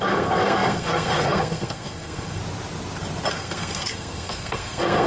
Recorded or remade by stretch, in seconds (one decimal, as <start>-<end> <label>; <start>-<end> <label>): 0.0-2.4 remade; 2.4-3.3 recorded; 3.3-5.1 remade